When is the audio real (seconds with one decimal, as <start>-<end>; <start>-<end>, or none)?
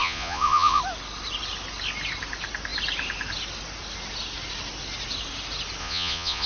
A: 0.8-5.8